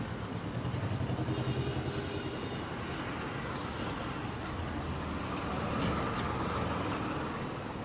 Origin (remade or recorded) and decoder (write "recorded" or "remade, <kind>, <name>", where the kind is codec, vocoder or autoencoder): recorded